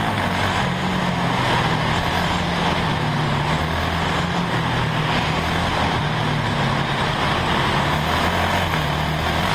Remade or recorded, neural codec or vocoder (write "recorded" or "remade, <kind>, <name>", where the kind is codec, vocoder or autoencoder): recorded